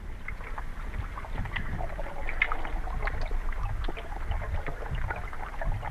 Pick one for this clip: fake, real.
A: real